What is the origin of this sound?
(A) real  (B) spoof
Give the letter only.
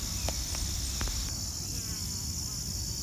A